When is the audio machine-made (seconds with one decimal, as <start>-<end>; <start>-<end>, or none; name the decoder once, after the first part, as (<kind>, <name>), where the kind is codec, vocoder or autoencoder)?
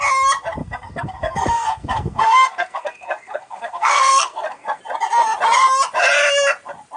0.6-4.8 (codec, SNAC)